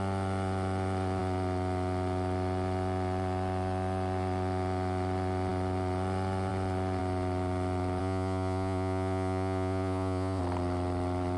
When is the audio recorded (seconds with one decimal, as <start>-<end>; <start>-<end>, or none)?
0.0-8.0; 10.4-11.4